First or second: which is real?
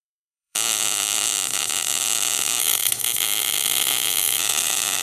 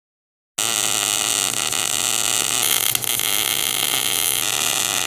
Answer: second